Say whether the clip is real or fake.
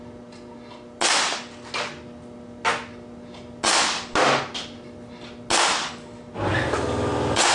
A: real